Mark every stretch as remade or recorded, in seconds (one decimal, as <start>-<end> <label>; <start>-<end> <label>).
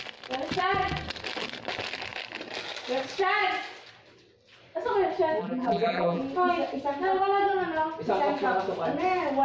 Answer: 0.0-5.4 recorded; 5.4-6.2 remade; 6.2-9.4 recorded